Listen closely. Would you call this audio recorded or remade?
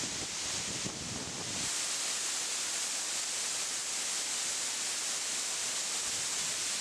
recorded